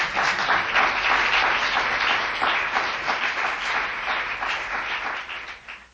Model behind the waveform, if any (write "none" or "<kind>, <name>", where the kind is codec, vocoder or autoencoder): none